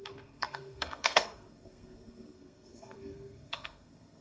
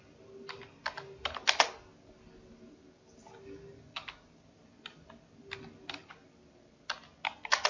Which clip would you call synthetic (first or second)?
first